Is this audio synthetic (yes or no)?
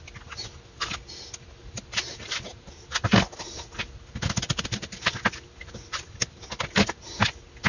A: no